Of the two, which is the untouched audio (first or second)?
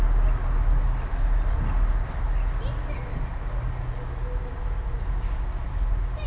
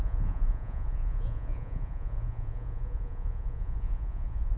first